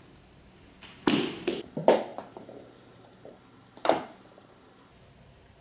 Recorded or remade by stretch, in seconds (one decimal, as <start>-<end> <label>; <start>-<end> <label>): 0.0-2.1 recorded; 2.1-5.6 remade

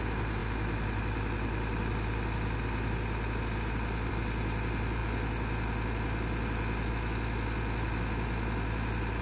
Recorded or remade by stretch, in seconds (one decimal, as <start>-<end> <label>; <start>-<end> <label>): 0.0-5.0 recorded; 5.0-6.9 remade; 6.9-9.2 recorded

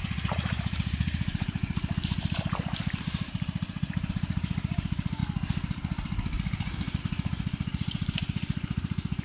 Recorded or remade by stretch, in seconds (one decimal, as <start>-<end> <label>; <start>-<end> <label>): 0.0-5.2 remade; 5.2-7.0 recorded; 7.0-9.2 remade

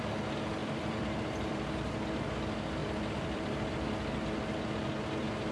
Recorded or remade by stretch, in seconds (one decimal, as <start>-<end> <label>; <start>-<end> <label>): 0.0-0.6 recorded; 0.6-1.6 remade; 1.6-2.8 recorded; 2.8-3.9 remade; 3.9-5.5 recorded

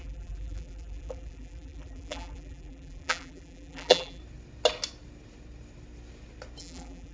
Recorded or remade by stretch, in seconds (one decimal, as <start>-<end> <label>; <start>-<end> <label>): 0.0-4.2 remade; 4.2-6.6 recorded; 6.6-7.1 remade

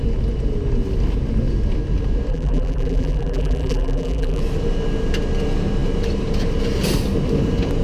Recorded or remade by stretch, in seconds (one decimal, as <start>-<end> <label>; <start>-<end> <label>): 0.0-2.3 recorded; 2.3-4.4 remade; 4.4-7.8 recorded

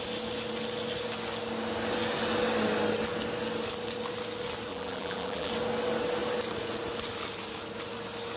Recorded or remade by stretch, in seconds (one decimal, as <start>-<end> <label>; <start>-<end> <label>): 0.0-4.7 recorded; 4.7-5.5 remade; 5.5-8.4 recorded